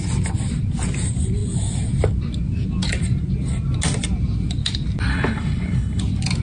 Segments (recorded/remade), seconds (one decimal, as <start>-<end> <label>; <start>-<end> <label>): 0.0-5.1 recorded; 5.1-6.0 remade; 6.0-6.4 recorded